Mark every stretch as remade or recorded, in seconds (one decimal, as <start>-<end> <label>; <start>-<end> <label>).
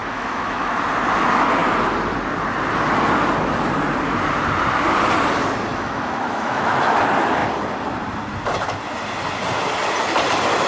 0.0-0.7 remade; 0.7-5.7 recorded; 5.7-7.0 remade; 7.0-10.7 recorded